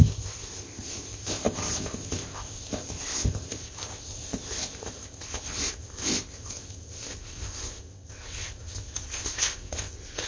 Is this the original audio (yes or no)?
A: no